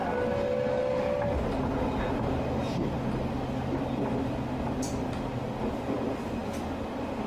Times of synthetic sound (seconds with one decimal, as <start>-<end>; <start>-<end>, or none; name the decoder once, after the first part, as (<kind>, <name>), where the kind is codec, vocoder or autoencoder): none